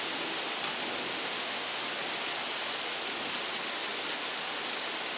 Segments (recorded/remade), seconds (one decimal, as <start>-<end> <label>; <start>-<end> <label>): 0.0-1.1 recorded; 1.1-1.8 remade; 1.8-5.2 recorded